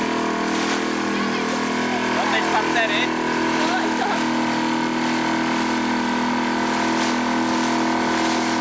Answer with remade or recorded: recorded